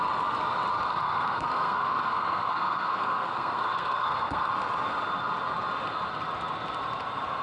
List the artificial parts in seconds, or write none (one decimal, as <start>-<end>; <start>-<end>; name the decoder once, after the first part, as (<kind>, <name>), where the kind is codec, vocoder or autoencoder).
0.9-4.5 (codec, SNAC)